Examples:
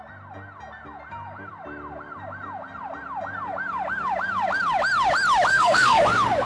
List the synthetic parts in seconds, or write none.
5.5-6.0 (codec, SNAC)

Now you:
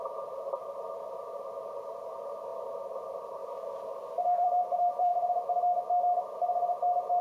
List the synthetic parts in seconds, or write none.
0.0-5.1 (vocoder, BigVGAN v2); 6.2-7.2

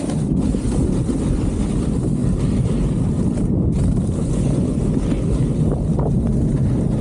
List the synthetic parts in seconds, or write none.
4.2-4.8 (vocoder, Vocos)

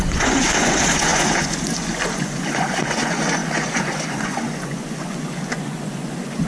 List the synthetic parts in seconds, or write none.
0.0-6.5 (vocoder, Vocos)

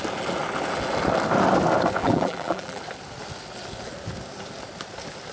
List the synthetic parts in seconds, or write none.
2.0-2.8 (vocoder, BigVGAN v2)

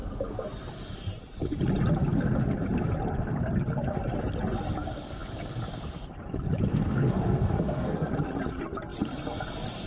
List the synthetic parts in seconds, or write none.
6.7-8.1 (codec, SNAC)

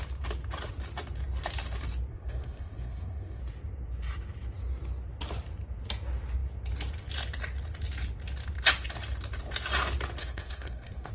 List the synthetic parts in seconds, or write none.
2.1-3.4 (codec, SNAC); 10.2-11.1